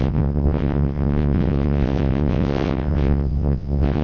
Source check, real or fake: fake